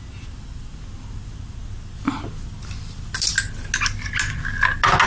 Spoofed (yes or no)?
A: no